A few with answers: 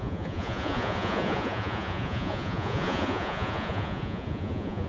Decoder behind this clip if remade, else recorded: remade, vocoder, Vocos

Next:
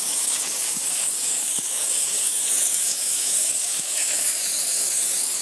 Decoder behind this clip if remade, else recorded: remade, codec, DAC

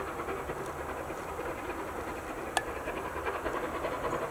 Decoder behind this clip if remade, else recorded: recorded